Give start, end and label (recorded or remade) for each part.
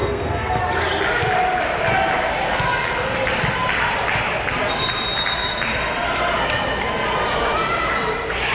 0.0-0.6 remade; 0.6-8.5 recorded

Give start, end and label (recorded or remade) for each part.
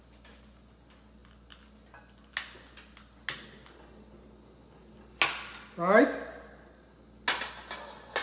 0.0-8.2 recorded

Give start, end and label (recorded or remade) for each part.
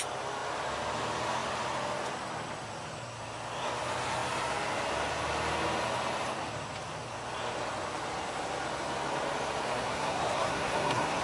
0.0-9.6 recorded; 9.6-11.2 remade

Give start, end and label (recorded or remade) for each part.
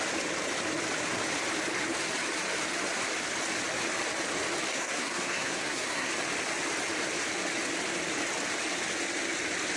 0.0-4.7 recorded; 4.7-6.1 remade; 6.1-9.8 recorded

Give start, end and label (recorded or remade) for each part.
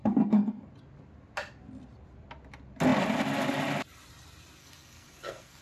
0.0-0.7 remade; 0.7-4.6 recorded; 4.6-5.6 remade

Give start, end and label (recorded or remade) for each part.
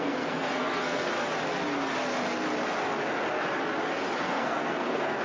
0.0-1.1 remade; 1.1-4.2 recorded; 4.2-5.2 remade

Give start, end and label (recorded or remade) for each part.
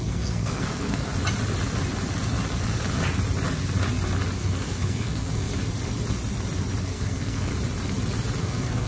0.0-1.1 remade; 1.1-4.4 recorded; 4.4-5.5 remade; 5.5-6.8 recorded; 6.8-7.5 remade; 7.5-8.4 recorded; 8.4-8.9 remade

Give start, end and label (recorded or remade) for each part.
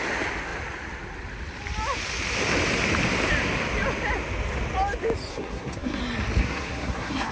0.0-5.3 recorded; 5.3-6.0 remade; 6.0-6.4 recorded; 6.4-7.3 remade